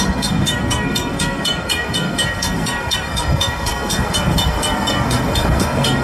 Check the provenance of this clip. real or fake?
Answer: fake